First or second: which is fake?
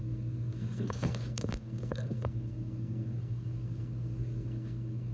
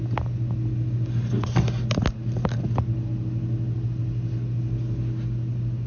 first